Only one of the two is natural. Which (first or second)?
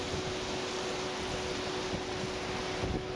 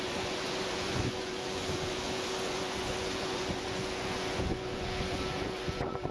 first